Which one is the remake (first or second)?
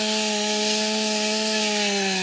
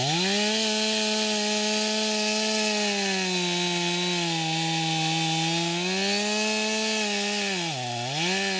first